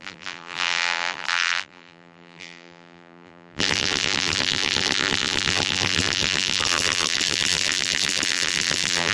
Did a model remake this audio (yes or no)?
yes